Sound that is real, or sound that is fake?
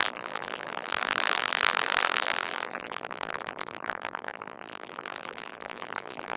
fake